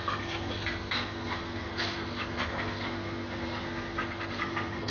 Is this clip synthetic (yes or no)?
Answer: yes